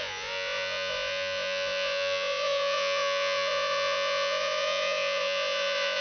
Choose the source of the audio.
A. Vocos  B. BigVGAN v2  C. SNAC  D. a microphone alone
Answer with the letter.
A